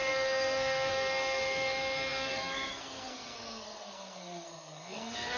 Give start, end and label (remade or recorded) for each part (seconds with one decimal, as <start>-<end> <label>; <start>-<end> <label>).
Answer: 0.0-5.4 remade